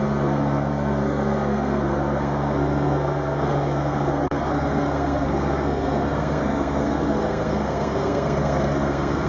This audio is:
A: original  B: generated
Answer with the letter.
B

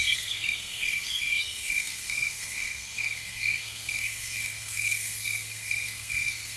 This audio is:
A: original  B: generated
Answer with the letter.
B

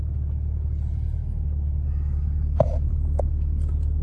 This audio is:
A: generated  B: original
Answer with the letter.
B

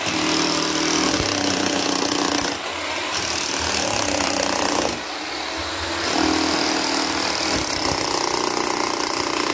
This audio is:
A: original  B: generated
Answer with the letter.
A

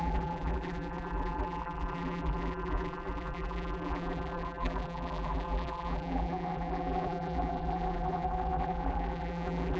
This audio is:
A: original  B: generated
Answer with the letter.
B